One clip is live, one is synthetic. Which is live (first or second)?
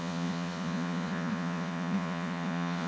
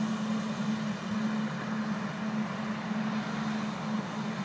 second